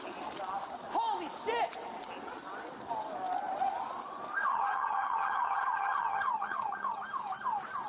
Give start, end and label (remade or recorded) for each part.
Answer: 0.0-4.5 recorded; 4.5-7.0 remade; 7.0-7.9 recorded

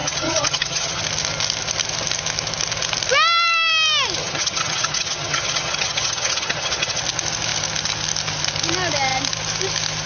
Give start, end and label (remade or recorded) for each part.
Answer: 0.0-1.0 remade; 1.0-4.2 recorded; 4.2-7.0 remade; 7.0-10.1 recorded

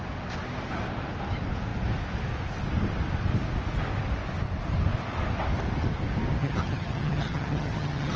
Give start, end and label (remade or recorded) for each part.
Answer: 0.0-6.4 recorded; 6.4-8.2 remade

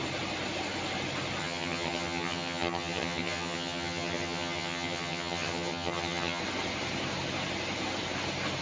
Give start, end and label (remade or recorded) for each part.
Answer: 0.0-1.4 recorded; 1.4-6.4 remade; 6.4-8.6 recorded

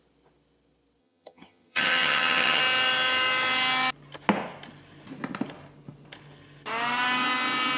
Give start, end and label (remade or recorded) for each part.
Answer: 0.0-1.0 recorded; 1.0-2.6 remade; 2.6-7.8 recorded

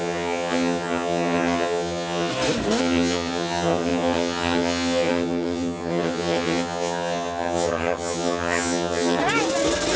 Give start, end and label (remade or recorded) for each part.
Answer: 0.0-2.3 remade; 2.3-2.8 recorded; 2.8-9.2 remade; 9.2-10.0 recorded

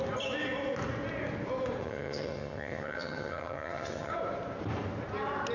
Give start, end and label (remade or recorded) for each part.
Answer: 0.0-1.8 recorded; 1.8-4.1 remade; 4.1-5.5 recorded

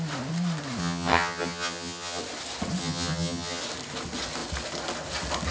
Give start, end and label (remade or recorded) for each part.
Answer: 0.0-0.8 recorded; 0.8-2.2 remade; 2.2-2.8 recorded; 2.8-3.6 remade; 3.6-5.5 recorded